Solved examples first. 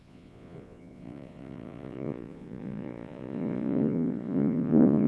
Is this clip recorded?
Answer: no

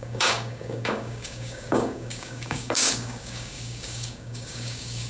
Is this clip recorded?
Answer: no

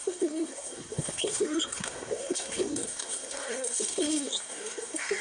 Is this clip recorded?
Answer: no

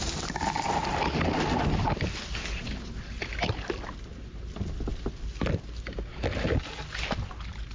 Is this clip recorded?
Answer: yes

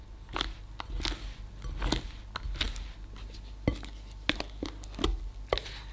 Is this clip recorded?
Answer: yes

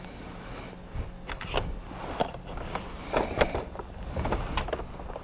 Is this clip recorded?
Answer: yes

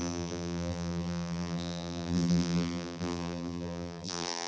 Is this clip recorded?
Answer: no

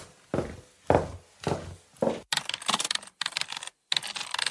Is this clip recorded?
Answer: yes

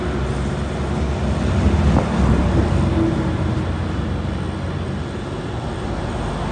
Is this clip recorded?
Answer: yes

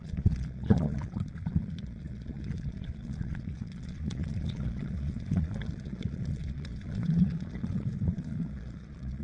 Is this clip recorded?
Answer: no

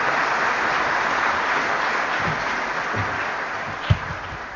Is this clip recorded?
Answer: yes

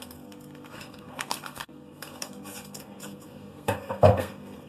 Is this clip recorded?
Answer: no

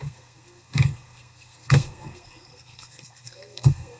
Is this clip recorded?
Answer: no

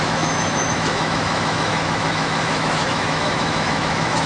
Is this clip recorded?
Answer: no